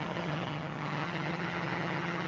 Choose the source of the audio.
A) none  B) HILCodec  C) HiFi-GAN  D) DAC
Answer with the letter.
C